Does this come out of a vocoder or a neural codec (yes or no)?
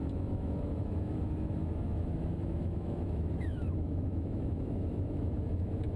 yes